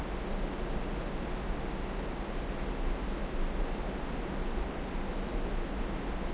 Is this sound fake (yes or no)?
no